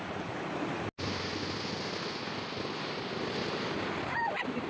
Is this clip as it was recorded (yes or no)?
yes